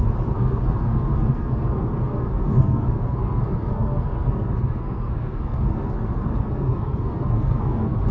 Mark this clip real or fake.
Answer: fake